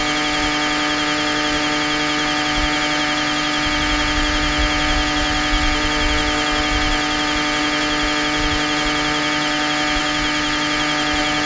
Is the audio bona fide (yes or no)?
yes